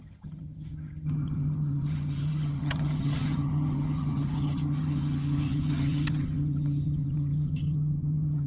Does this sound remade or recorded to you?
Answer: remade